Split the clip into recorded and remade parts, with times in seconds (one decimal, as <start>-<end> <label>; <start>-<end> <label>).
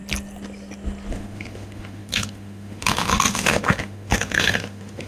0.0-1.1 recorded; 1.1-5.1 remade